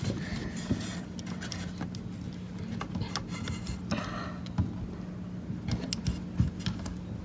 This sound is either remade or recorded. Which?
recorded